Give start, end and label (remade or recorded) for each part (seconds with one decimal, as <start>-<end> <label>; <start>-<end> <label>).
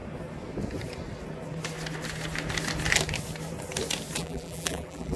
0.0-4.2 recorded; 4.2-5.2 remade